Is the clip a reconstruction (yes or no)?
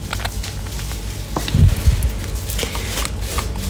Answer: no